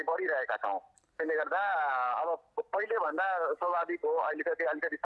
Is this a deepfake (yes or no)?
no